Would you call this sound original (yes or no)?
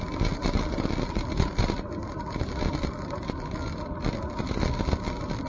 yes